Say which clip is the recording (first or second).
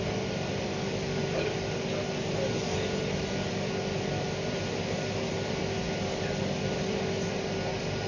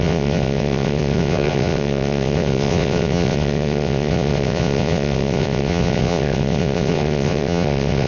first